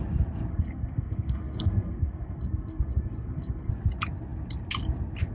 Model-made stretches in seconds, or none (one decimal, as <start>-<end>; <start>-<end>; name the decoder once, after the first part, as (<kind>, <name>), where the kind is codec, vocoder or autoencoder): 0.5-3.7 (codec, SNAC)